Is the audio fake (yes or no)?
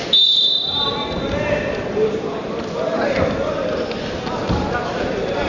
no